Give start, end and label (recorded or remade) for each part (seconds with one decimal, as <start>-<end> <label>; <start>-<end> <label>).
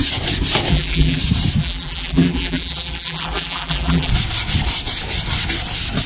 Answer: 0.0-0.7 recorded; 0.7-1.2 remade; 1.2-1.6 recorded; 1.6-4.1 remade; 4.1-6.1 recorded